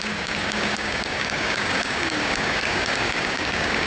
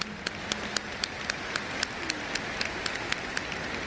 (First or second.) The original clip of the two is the second